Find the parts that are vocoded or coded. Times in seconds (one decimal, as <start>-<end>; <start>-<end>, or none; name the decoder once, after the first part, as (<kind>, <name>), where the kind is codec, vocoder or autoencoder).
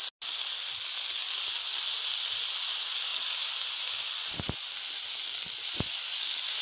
none